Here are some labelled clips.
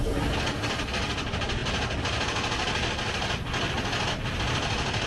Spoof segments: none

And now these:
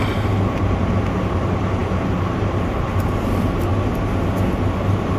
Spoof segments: 1.8-2.7 (vocoder, BigVGAN v2)

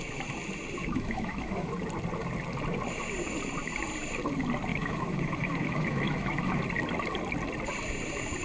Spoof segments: 0.8-1.7 (autoencoder, DAC-VAE); 4.7-6.6

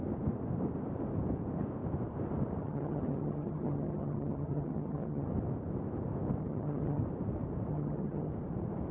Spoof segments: 2.6-5.3 (vocoder, HiFi-GAN); 6.4-7.0; 7.7-8.3

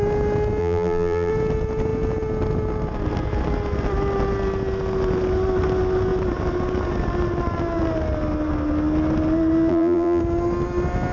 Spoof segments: 0.6-1.3 (vocoder, BigVGAN v2); 9.7-10.2

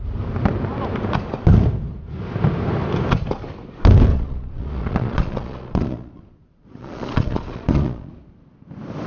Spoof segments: 4.1-8.1 (vocoder, Vocos)

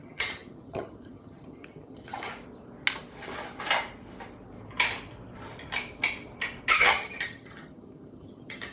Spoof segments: 0.0-2.3 (vocoder, HiFi-GAN); 6.7-8.7